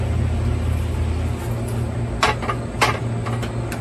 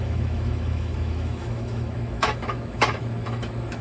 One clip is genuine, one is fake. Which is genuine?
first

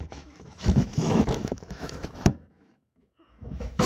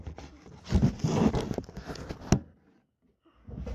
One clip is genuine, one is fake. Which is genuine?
second